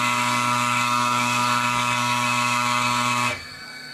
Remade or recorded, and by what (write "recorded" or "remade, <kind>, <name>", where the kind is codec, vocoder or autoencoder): remade, codec, SNAC